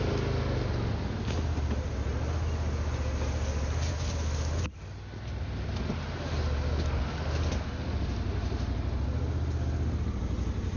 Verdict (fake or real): real